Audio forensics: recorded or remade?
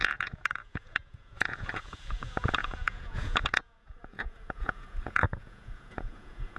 remade